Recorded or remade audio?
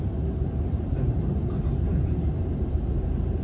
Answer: remade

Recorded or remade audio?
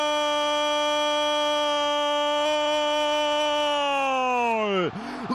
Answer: recorded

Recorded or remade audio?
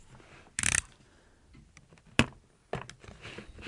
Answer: recorded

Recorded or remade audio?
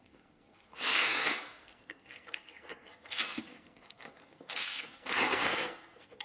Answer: remade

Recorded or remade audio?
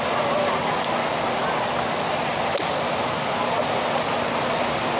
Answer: recorded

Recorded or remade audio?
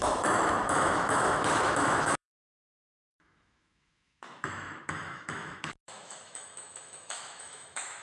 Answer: remade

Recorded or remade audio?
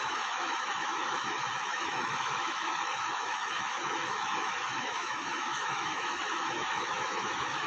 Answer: remade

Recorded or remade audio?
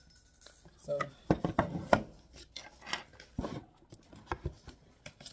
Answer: recorded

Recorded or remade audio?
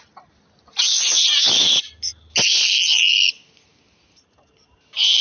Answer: recorded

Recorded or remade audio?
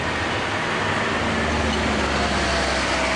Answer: recorded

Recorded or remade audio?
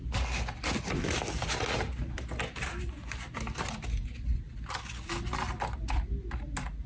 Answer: recorded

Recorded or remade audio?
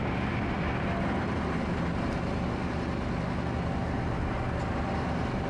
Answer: recorded